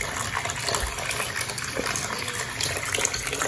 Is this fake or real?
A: real